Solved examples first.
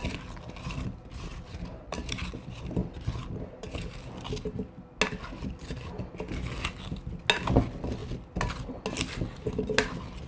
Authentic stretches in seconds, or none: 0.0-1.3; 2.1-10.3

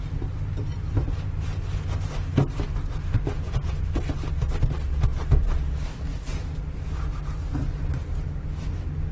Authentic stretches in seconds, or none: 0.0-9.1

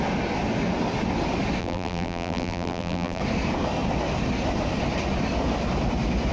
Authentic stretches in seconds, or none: 0.0-1.6; 3.2-6.3

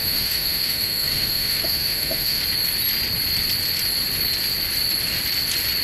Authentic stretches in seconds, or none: 2.4-5.8

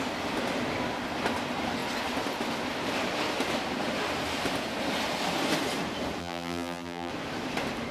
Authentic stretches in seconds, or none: 0.0-6.2; 7.1-7.9